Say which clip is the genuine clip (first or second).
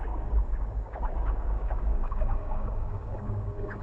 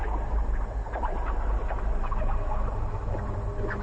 second